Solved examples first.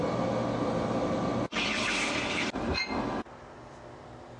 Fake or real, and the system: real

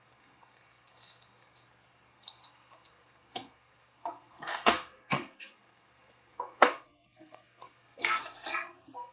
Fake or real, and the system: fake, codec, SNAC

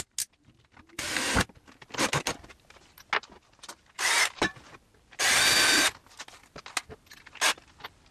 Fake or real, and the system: real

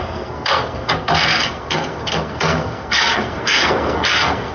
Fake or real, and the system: fake, codec, SNAC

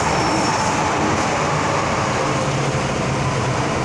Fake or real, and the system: real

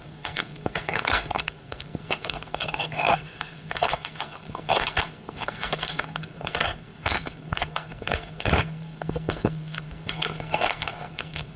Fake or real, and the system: fake, codec, SNAC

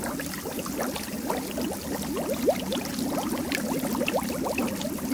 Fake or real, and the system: real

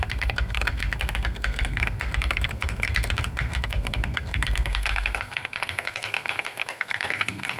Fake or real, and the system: fake, codec, SNAC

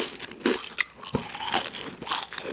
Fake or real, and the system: real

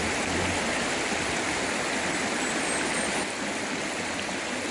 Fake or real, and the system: real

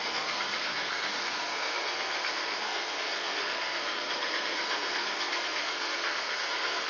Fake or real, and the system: fake, codec, SNAC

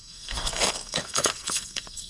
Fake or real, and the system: fake, codec, SNAC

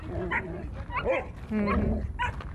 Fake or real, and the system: real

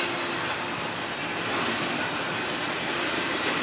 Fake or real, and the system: real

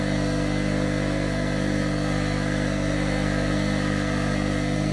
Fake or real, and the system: fake, codec, SNAC